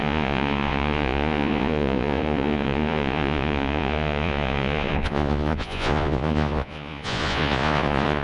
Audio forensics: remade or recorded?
remade